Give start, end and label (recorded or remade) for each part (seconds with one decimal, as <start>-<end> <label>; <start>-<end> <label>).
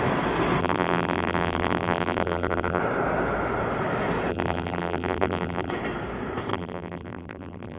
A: 0.0-0.6 recorded; 0.6-2.8 remade; 2.8-4.3 recorded; 4.3-5.7 remade; 5.7-6.5 recorded; 6.5-7.8 remade